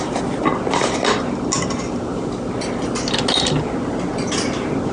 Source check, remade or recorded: recorded